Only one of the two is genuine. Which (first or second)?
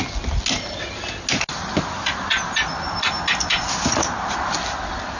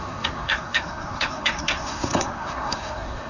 first